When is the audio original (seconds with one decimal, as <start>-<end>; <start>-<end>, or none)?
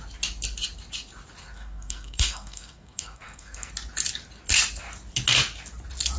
0.0-1.4; 3.7-6.2